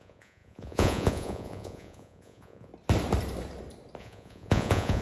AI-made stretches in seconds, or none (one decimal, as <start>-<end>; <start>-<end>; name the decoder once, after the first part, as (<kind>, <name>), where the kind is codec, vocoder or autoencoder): 0.0-2.7 (vocoder, Vocos); 4.0-5.0